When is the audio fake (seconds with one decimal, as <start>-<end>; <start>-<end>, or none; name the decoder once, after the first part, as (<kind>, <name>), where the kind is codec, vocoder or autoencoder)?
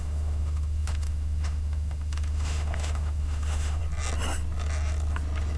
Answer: 0.0-3.8 (autoencoder, DAC-VAE)